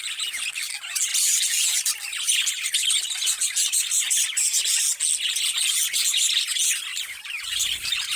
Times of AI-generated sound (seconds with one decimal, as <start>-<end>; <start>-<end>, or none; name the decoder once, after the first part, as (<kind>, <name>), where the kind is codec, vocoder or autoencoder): 3.6-4.7 (vocoder, BigVGAN v2); 6.9-8.2